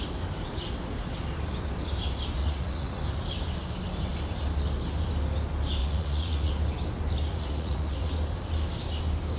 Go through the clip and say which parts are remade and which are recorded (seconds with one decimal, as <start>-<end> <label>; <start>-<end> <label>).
0.0-2.4 recorded; 2.4-3.0 remade; 3.0-5.8 recorded; 5.8-6.5 remade; 6.5-7.3 recorded; 7.3-8.1 remade; 8.1-9.4 recorded